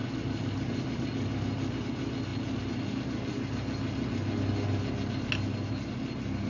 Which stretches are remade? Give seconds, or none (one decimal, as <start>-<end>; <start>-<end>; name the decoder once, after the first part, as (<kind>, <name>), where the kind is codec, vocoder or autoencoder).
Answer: none